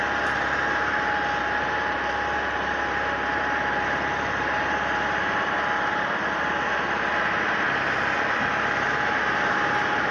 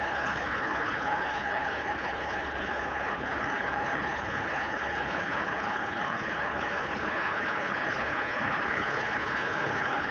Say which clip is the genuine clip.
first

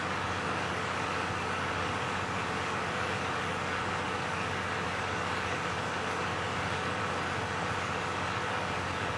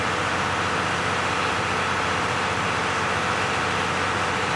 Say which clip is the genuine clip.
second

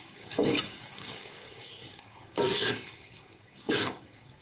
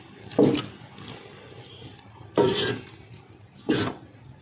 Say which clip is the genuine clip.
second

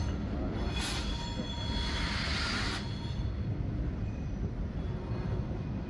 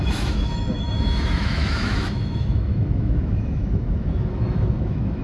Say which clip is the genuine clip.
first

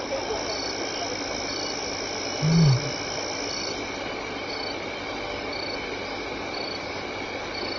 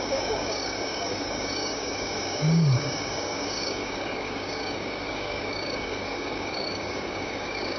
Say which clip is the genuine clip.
first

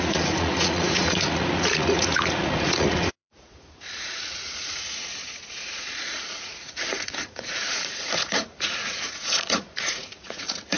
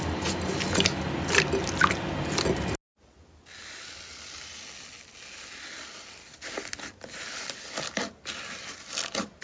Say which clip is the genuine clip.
second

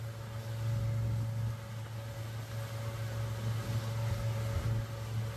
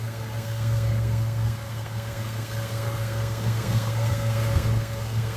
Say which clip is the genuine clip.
first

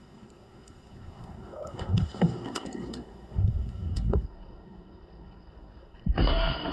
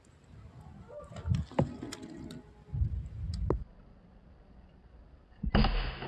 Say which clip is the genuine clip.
second